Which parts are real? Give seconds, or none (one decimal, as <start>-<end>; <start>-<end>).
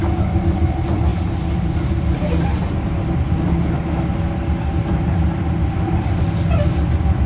0.0-7.3